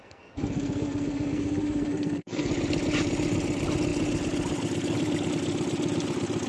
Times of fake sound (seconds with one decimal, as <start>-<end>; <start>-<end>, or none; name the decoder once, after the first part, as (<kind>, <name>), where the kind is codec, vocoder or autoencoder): 0.0-2.5 (codec, SNAC)